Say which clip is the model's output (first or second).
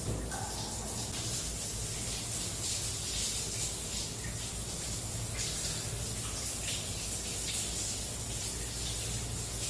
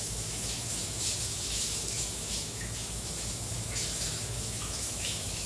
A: second